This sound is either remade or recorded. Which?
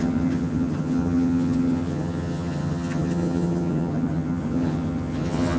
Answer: remade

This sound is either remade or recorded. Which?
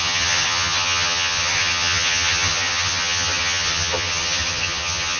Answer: remade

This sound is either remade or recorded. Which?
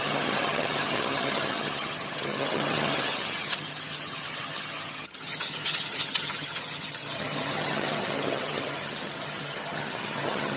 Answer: remade